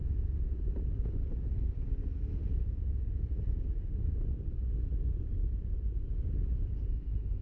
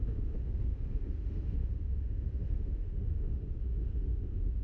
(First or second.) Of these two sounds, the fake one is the second